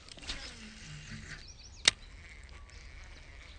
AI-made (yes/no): no